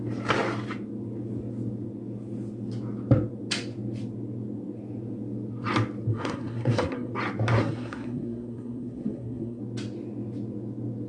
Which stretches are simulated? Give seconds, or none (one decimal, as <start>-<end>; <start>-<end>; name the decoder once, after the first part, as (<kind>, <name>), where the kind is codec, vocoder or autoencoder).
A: 6.1-7.1 (codec, SNAC); 7.6-9.6